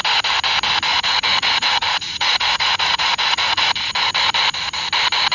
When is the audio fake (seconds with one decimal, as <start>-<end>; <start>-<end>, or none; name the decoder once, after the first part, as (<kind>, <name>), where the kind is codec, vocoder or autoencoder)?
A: 0.9-3.6 (vocoder, Vocos)